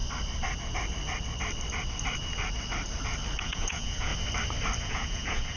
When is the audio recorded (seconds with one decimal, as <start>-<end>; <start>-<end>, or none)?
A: 0.0-3.4; 4.1-4.8